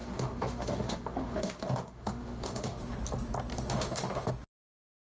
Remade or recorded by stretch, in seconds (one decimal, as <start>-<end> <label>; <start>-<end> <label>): 0.0-2.9 remade; 2.9-3.5 recorded; 3.5-4.3 remade; 4.3-5.2 recorded